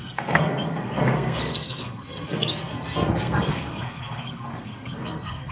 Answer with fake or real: fake